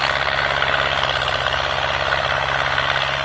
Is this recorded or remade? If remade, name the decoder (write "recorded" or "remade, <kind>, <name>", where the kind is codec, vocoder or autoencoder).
recorded